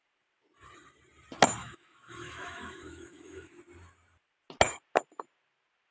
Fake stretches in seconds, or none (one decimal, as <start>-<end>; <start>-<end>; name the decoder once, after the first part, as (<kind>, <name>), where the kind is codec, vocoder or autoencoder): 1.6-3.5 (autoencoder, DAC-VAE)